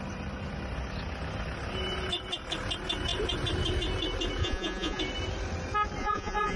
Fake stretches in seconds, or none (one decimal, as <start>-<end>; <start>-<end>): 4.4-5.0; 6.0-6.6